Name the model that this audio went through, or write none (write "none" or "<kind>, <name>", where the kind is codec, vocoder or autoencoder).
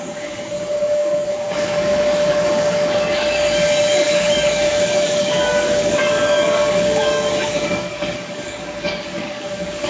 codec, DAC